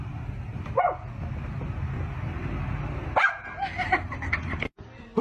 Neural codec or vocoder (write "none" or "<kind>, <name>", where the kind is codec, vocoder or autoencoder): none